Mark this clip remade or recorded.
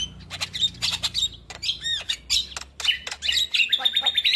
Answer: recorded